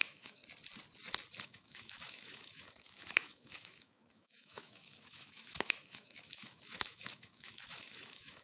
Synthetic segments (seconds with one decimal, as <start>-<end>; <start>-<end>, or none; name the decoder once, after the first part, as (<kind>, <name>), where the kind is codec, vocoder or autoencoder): 0.0-0.4 (autoencoder, DAC-VAE); 1.4-8.4